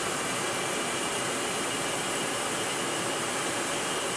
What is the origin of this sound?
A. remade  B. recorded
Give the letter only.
B